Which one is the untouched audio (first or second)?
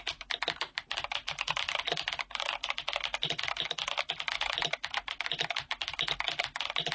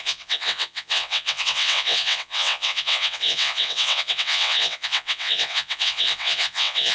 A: first